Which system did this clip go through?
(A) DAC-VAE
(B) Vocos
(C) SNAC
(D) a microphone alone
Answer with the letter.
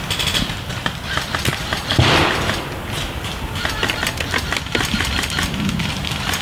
D